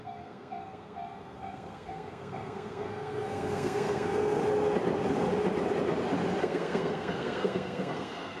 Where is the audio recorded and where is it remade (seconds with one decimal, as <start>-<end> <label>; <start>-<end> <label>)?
0.0-4.4 remade; 4.4-6.4 recorded; 6.4-8.4 remade